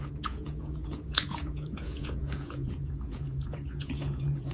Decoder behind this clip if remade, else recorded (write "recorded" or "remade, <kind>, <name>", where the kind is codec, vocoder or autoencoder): remade, vocoder, Vocos